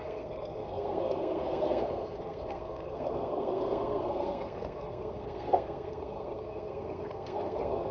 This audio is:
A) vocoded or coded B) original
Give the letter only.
A